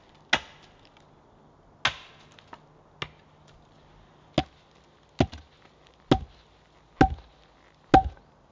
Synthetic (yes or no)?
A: no